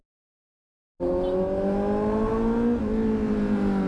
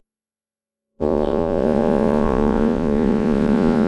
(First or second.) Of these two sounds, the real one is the first